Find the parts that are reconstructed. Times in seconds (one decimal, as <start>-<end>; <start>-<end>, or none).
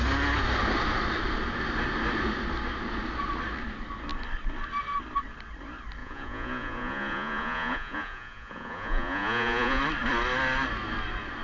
6.0-9.8